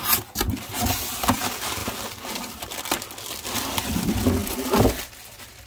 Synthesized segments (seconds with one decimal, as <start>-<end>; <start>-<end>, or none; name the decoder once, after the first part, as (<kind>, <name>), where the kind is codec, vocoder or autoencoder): 4.4-5.7 (vocoder, BigVGAN v2)